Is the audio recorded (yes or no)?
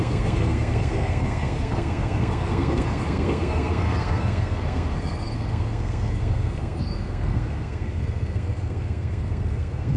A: no